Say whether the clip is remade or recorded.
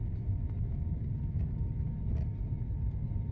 recorded